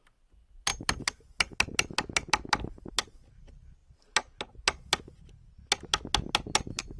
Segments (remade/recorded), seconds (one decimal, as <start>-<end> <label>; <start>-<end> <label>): 0.0-7.0 recorded